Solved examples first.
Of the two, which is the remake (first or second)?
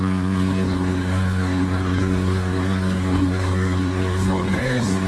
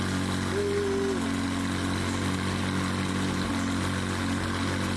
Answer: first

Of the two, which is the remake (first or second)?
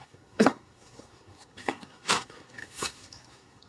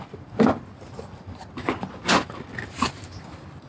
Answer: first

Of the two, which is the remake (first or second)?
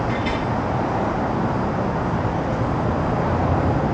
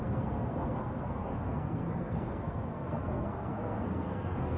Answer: second